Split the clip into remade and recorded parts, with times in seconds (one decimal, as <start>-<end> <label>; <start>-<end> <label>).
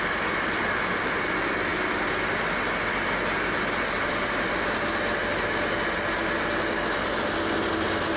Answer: 0.0-8.2 recorded